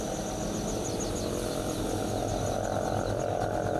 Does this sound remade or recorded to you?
recorded